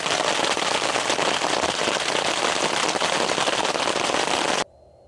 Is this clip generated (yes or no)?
no